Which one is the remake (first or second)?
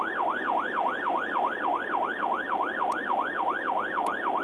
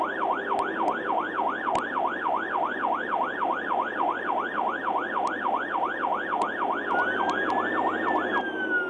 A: first